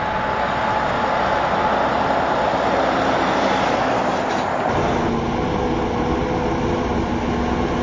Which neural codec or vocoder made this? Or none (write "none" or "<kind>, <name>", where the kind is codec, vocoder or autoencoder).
none